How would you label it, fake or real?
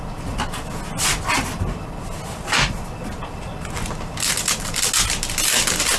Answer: real